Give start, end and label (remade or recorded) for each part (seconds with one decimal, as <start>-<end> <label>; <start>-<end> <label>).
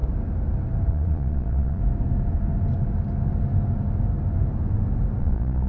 0.0-0.9 recorded; 0.9-1.8 remade; 1.8-5.2 recorded; 5.2-5.7 remade